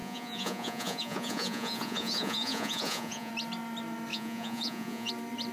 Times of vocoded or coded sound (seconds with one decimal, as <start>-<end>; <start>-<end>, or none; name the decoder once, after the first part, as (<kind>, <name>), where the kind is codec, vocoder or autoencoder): 0.0-3.3 (vocoder, Vocos); 4.1-5.1